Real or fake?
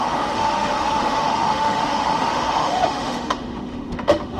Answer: fake